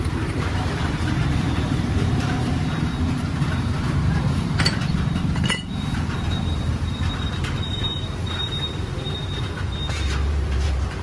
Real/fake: fake